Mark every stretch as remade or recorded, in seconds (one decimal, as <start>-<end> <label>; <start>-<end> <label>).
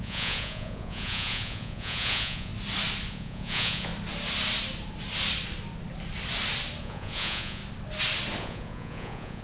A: 0.0-2.5 remade; 2.5-3.1 recorded; 3.1-3.9 remade; 3.9-6.8 recorded; 6.8-7.6 remade; 7.6-8.4 recorded; 8.4-9.4 remade